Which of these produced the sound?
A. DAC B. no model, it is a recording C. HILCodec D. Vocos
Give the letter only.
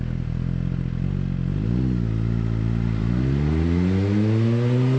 B